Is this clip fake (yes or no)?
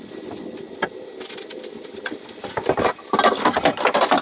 no